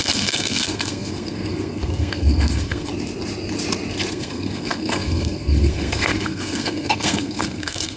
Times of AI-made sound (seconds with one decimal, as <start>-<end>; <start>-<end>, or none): 0.0-2.9; 4.1-8.0